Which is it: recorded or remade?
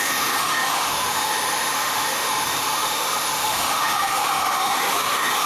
remade